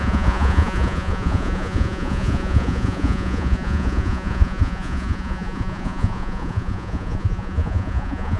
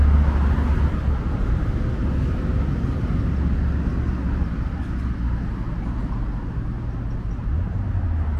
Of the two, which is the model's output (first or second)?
first